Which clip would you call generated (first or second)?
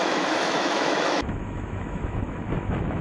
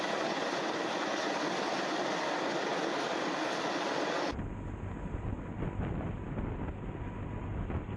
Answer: first